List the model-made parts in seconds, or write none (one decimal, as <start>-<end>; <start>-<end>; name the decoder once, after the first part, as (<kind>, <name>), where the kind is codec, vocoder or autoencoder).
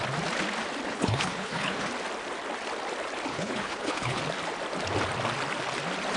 0.9-1.9 (codec, HILCodec); 3.3-4.2